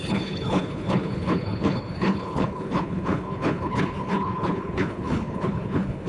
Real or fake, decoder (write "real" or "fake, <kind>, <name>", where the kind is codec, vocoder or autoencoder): fake, codec, HILCodec